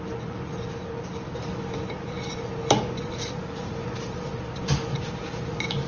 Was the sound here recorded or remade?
recorded